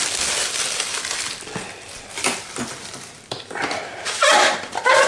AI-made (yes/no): yes